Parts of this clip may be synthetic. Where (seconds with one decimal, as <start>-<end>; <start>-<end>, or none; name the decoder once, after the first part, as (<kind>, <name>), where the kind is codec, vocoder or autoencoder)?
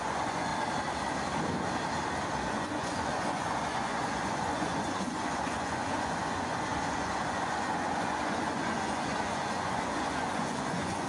0.0-0.5 (vocoder, Vocos); 2.5-11.1